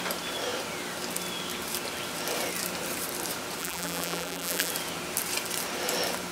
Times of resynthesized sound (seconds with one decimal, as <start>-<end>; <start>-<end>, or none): 3.6-4.7